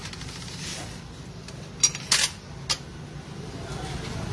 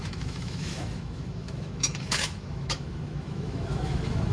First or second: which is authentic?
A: first